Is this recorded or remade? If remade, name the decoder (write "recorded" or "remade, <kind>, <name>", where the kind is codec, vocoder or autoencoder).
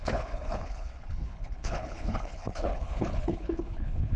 remade, codec, HILCodec